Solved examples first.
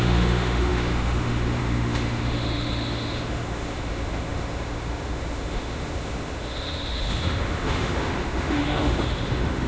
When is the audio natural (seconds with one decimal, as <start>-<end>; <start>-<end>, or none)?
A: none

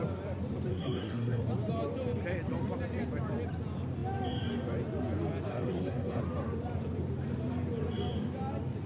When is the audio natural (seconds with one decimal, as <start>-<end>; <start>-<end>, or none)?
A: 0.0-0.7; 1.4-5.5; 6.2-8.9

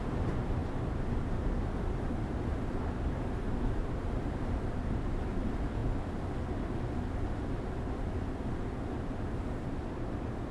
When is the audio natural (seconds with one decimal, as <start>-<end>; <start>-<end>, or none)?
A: 0.0-10.5

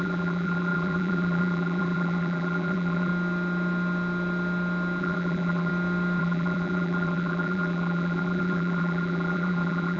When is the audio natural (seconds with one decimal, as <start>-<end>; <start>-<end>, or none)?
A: 3.1-5.0; 5.7-6.2